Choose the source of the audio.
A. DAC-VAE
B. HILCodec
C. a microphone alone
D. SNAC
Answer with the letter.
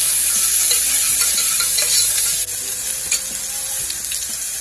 C